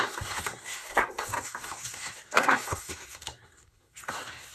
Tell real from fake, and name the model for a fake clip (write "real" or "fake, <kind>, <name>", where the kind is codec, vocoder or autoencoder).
fake, codec, SNAC